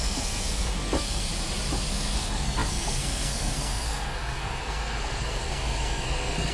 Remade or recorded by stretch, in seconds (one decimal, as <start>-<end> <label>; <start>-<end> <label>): 0.0-1.3 remade; 1.3-1.9 recorded; 1.9-6.5 remade